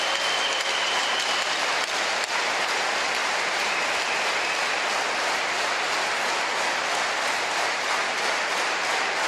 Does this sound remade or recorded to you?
remade